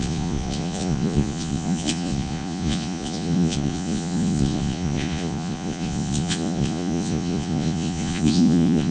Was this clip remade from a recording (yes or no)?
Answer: yes